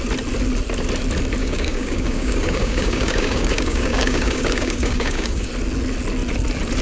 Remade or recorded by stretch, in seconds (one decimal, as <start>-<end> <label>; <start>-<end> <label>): 0.0-1.4 recorded; 1.4-5.5 remade; 5.5-6.8 recorded